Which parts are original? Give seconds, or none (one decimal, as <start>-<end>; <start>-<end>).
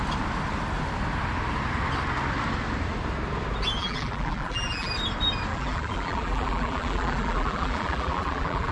0.0-3.8; 4.9-5.5